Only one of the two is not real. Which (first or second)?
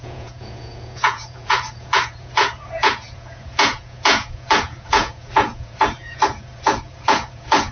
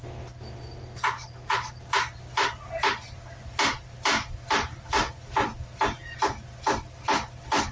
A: first